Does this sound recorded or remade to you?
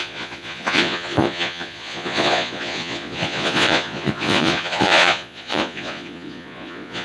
remade